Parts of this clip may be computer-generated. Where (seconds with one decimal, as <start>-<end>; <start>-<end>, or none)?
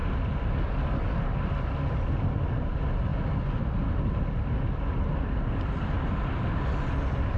none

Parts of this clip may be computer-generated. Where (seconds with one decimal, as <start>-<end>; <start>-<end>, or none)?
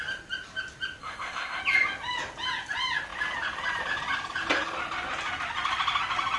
1.0-1.6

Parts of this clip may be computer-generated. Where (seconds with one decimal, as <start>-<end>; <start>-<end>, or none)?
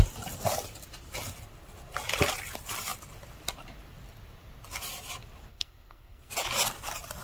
5.5-6.3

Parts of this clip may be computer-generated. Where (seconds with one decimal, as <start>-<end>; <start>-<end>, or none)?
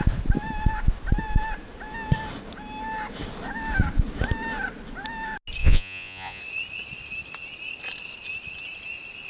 5.6-6.4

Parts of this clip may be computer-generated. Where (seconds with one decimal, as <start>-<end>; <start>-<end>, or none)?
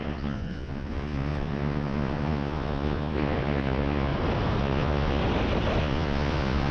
0.0-4.1; 4.6-5.2; 5.8-6.7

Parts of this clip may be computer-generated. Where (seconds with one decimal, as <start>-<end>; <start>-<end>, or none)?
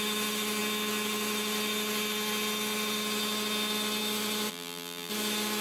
4.5-5.1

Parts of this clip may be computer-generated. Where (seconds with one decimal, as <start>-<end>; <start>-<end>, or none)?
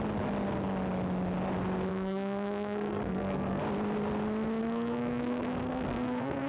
1.9-3.6; 4.6-6.5